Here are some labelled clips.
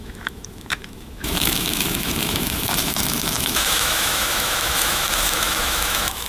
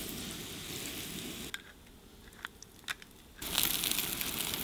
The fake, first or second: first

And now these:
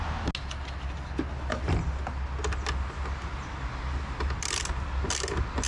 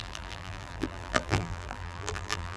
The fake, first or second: second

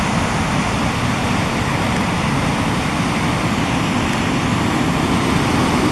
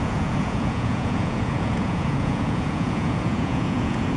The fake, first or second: second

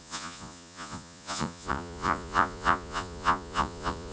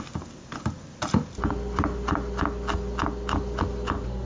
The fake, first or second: first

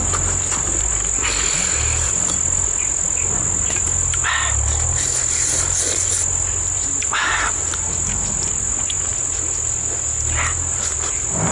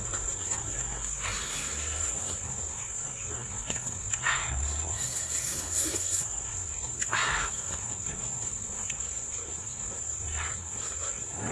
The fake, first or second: second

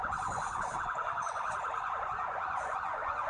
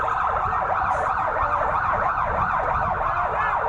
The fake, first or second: first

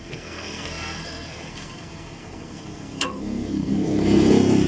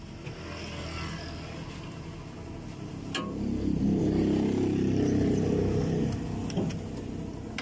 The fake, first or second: first